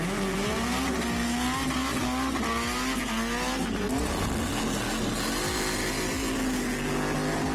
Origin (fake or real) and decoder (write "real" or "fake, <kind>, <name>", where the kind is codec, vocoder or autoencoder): real